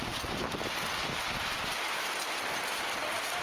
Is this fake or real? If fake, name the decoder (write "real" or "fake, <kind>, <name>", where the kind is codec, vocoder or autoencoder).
real